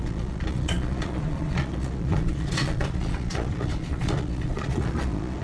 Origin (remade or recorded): remade